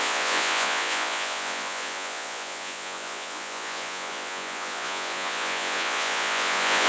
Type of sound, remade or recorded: remade